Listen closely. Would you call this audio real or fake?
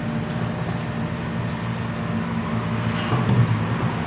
real